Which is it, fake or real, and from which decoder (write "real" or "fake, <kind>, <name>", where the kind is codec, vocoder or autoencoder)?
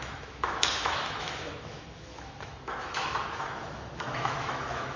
fake, autoencoder, DAC-VAE